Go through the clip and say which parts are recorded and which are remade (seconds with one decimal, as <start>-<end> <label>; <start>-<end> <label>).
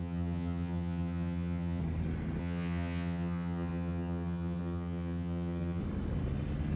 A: 0.0-1.8 remade; 1.8-2.4 recorded; 2.4-5.8 remade; 5.8-6.8 recorded